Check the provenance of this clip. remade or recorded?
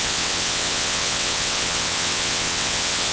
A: remade